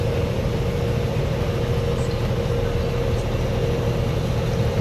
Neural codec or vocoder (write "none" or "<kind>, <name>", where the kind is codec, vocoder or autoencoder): none